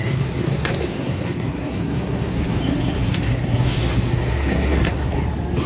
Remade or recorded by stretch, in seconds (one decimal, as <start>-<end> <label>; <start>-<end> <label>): 0.0-5.2 remade; 5.2-5.7 recorded